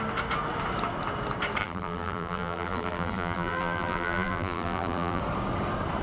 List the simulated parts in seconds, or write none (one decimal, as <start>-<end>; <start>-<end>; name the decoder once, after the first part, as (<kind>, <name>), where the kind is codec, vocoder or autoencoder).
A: 1.6-5.2 (vocoder, BigVGAN v2)